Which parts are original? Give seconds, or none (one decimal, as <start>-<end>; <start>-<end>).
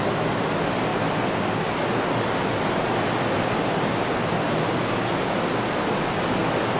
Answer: 0.0-6.8